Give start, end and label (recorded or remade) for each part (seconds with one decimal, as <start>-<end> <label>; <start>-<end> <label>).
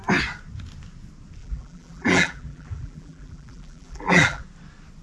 0.0-1.4 recorded; 1.4-4.4 remade; 4.4-5.0 recorded